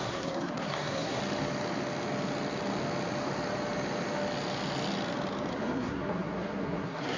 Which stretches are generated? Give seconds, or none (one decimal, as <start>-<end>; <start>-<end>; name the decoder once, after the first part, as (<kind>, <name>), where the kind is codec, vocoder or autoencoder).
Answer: 0.0-1.2 (codec, SNAC); 5.5-7.2